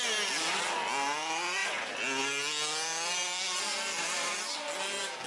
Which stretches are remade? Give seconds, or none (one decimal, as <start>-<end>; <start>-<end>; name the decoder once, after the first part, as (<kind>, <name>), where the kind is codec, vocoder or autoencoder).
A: none